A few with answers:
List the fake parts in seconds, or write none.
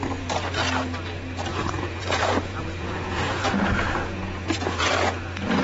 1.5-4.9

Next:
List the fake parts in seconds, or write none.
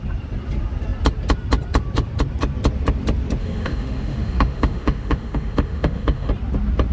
3.4-6.3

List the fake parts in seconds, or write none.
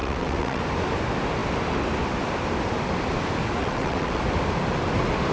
0.0-0.6; 3.6-4.2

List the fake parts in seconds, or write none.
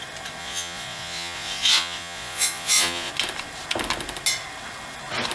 0.4-3.1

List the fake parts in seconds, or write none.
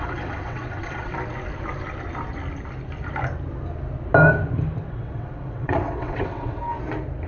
0.0-1.1; 4.8-6.6